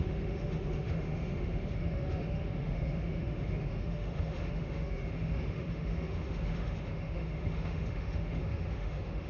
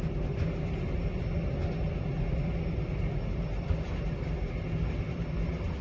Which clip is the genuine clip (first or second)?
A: second